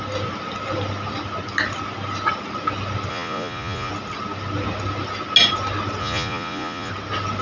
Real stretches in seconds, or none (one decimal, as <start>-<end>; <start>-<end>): 0.0-3.1; 3.9-6.0; 6.9-7.4